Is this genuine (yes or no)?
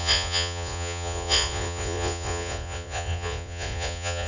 no